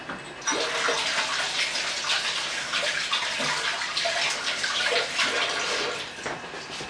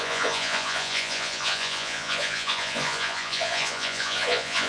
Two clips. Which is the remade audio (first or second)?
second